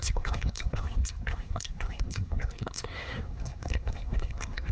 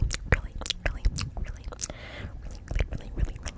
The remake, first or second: first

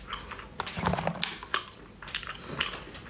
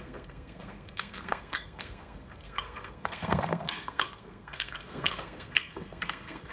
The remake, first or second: second